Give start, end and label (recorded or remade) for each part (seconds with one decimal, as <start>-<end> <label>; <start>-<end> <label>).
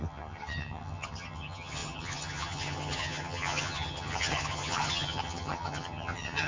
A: 0.0-6.5 remade